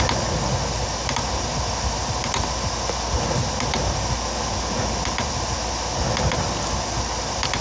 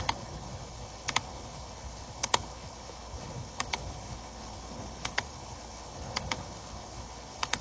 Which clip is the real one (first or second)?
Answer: first